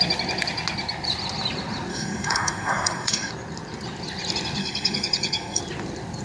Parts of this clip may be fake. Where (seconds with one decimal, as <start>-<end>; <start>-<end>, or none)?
1.9-3.3; 4.6-5.6